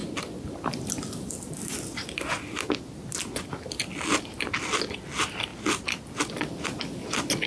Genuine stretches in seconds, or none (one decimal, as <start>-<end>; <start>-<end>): 0.0-7.5